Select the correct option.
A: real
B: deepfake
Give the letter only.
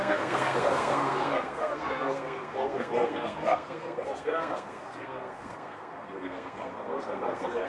B